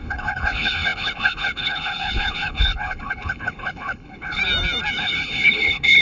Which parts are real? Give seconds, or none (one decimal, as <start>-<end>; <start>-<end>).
4.4-4.9